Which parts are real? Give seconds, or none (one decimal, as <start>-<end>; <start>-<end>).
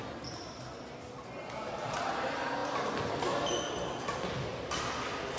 0.0-5.4